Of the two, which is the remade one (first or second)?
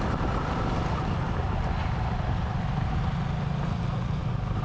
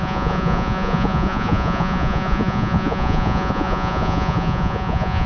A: second